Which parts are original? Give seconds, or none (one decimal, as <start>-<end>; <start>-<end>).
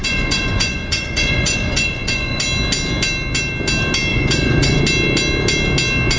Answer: 2.4-4.1; 4.8-6.2